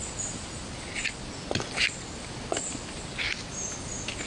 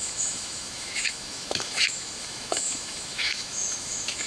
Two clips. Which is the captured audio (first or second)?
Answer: first